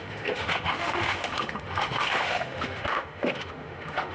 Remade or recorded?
remade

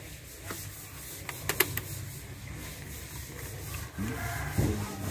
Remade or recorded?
recorded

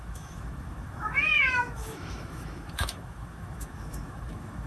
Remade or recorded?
remade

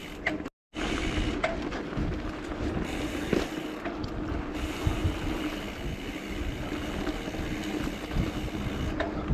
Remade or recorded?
recorded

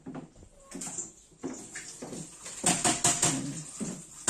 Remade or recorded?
recorded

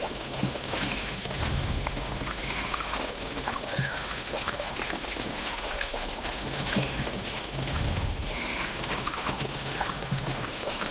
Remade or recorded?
remade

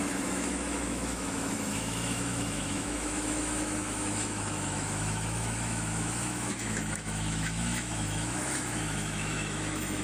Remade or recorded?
remade